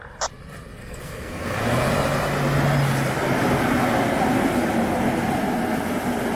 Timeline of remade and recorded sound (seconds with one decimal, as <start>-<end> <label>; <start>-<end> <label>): 0.0-0.8 recorded; 0.8-1.6 remade; 1.6-6.4 recorded